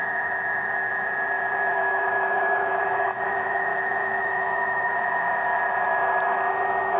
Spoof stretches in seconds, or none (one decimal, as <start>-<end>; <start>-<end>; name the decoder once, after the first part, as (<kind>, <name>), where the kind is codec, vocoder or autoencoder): 0.0-0.9 (autoencoder, DAC-VAE); 1.7-3.7; 4.2-4.9; 6.2-7.0